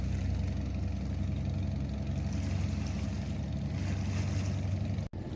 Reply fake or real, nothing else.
real